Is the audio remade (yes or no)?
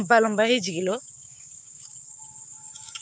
yes